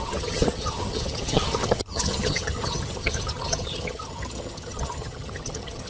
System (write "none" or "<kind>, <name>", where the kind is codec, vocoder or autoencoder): vocoder, HiFi-GAN